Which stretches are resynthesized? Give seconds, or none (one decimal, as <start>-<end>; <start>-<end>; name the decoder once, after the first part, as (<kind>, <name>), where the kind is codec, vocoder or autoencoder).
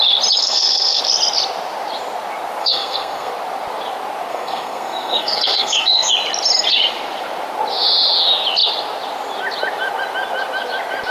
0.4-1.0 (codec, SNAC); 2.6-3.3; 4.3-6.1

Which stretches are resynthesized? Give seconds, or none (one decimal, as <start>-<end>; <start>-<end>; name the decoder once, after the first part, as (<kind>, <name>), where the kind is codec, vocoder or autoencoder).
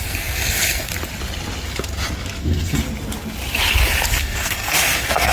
0.0-0.9 (codec, SNAC); 2.4-2.8; 4.2-5.3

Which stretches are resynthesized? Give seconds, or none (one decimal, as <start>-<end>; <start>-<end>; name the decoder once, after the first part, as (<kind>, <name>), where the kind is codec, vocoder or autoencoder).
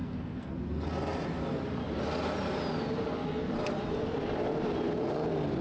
0.0-0.5 (codec, SNAC)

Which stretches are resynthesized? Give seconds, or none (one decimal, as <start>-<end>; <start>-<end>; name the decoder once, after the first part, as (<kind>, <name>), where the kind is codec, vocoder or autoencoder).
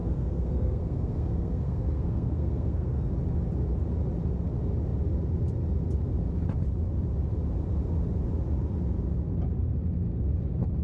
0.0-3.1 (codec, SNAC)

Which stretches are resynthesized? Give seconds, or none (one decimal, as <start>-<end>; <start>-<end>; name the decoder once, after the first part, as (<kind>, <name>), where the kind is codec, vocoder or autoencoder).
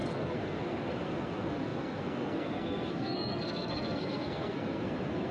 0.0-5.3 (codec, SNAC)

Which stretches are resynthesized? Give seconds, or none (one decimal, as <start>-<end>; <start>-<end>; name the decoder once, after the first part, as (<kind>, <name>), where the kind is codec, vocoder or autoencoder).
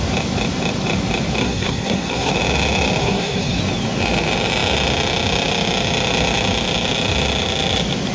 1.4-2.3 (codec, SNAC); 3.0-3.6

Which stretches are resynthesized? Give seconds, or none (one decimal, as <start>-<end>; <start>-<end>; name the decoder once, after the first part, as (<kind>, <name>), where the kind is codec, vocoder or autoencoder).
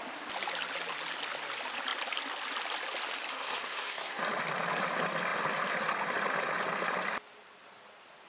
3.3-4.2 (codec, SNAC)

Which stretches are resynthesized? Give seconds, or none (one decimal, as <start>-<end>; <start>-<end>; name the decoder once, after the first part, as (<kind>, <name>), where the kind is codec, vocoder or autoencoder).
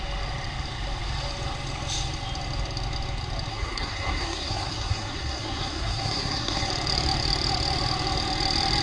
3.5-6.7 (codec, SNAC)